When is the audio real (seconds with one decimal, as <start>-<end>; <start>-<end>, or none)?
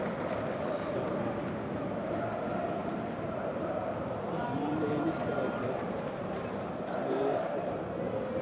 0.0-2.8; 7.8-8.4